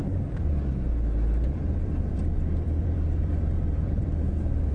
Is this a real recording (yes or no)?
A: no